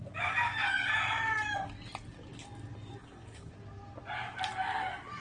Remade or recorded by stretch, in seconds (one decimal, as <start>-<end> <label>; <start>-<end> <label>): 0.0-3.0 recorded; 3.0-3.5 remade; 3.5-5.2 recorded